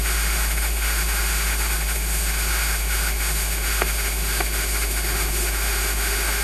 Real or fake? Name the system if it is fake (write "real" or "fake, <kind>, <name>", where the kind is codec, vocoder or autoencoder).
fake, autoencoder, DAC-VAE